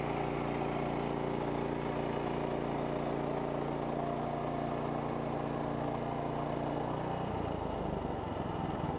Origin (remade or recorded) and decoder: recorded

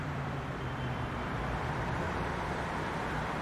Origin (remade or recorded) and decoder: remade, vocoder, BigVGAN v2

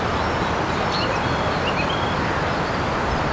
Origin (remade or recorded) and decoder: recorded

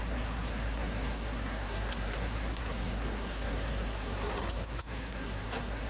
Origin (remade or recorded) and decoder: remade, codec, SNAC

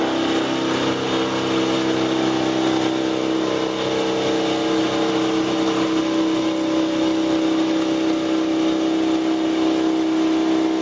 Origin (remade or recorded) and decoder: recorded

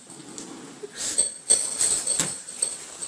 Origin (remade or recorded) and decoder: recorded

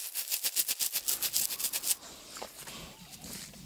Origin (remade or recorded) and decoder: recorded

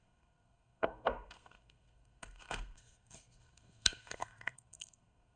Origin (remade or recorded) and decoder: remade, codec, SNAC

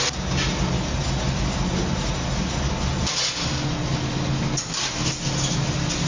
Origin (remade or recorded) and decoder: recorded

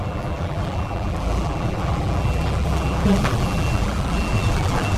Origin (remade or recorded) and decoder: remade, vocoder, BigVGAN v2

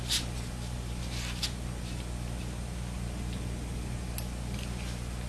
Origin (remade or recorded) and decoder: recorded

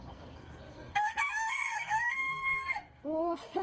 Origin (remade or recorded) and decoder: remade, codec, SNAC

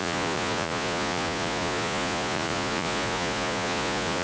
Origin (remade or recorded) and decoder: remade, vocoder, Vocos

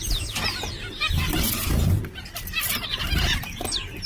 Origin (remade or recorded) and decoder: recorded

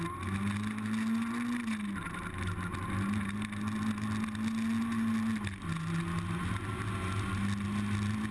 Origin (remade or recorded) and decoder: recorded